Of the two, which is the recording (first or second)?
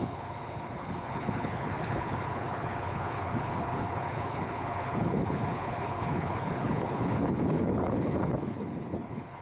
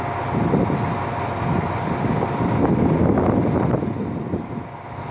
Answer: second